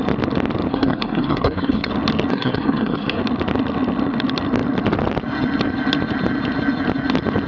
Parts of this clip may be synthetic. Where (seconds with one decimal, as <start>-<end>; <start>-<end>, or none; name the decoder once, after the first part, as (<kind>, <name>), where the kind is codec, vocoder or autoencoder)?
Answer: 0.7-1.9 (codec, SNAC); 2.3-3.2